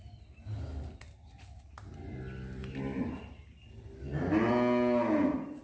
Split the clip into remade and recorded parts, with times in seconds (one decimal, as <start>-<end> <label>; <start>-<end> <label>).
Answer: 0.0-5.6 recorded